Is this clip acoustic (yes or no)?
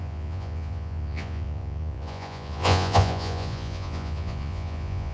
no